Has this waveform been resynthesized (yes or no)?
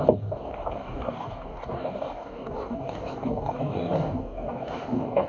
yes